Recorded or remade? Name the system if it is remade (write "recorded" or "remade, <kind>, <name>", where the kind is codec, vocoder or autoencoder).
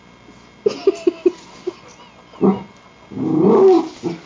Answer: recorded